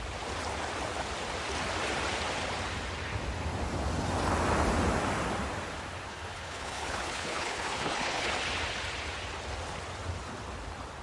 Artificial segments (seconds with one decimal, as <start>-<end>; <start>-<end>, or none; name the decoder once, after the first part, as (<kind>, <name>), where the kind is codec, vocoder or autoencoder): 6.1-8.3 (codec, HILCodec)